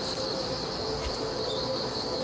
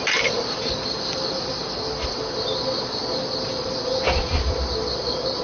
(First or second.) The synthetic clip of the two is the second